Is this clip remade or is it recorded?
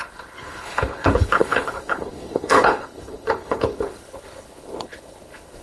remade